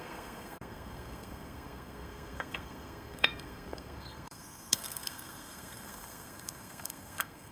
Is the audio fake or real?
fake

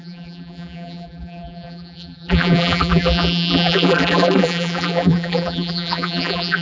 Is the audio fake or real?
fake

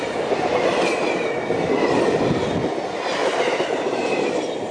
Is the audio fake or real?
real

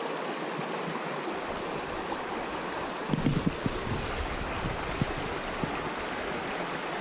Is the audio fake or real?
real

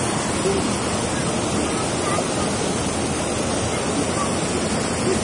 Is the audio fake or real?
real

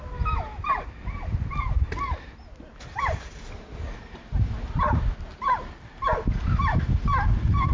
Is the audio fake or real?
real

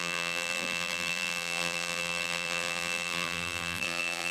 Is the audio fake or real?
fake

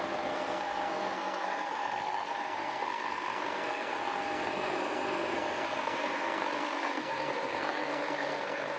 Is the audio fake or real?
fake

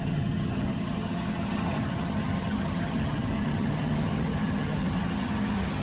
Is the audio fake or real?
fake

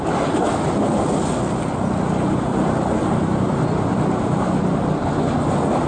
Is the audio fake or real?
real